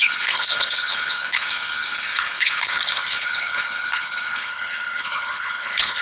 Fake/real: fake